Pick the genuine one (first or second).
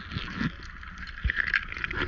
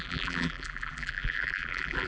first